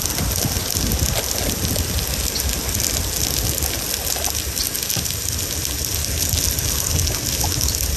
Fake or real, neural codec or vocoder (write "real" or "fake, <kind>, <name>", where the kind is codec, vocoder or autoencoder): real